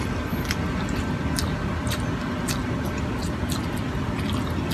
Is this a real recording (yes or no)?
yes